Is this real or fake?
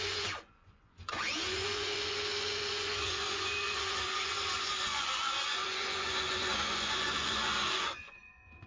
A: fake